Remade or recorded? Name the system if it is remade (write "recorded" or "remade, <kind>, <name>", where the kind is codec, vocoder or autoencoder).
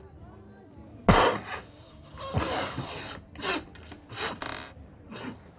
recorded